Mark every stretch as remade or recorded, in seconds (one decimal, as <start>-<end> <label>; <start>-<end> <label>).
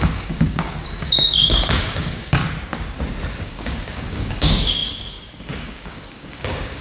0.0-2.4 remade; 2.4-3.4 recorded; 3.4-6.8 remade